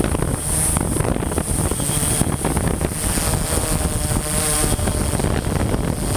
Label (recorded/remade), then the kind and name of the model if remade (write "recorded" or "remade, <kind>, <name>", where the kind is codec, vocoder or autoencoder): recorded